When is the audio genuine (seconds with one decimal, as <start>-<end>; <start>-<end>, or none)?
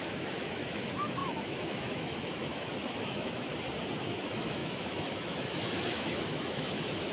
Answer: 3.5-4.0